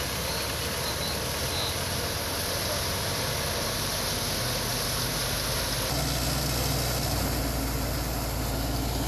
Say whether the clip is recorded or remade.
recorded